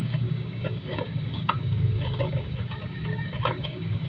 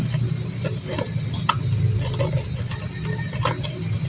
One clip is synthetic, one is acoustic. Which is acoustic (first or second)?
second